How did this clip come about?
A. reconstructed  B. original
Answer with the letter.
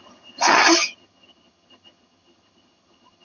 A